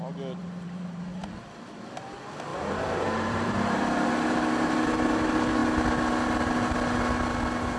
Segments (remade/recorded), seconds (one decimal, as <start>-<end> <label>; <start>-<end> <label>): 0.0-0.4 recorded; 0.4-1.0 remade; 1.0-2.5 recorded; 2.5-3.8 remade; 3.8-7.8 recorded